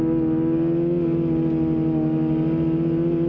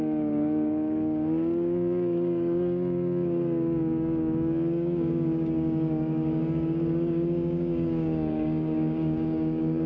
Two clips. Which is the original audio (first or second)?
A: first